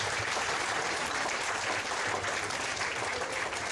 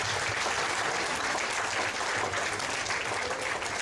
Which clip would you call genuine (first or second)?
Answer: second